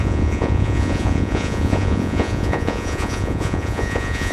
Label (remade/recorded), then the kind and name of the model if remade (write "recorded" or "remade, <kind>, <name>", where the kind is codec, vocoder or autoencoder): remade, vocoder, Vocos